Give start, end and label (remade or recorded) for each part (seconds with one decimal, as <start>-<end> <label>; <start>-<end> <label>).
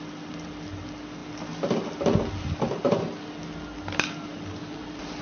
0.0-5.2 recorded